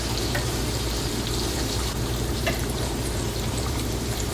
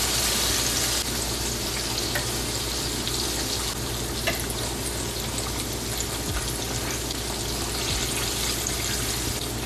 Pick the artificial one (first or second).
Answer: first